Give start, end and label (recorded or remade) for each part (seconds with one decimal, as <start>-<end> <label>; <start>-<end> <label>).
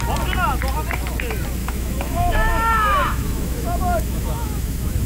0.0-1.6 recorded; 1.6-5.1 remade